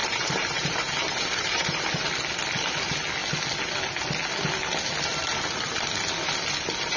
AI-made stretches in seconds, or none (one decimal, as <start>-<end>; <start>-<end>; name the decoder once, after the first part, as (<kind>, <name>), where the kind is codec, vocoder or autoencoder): 0.0-2.0 (vocoder, BigVGAN v2)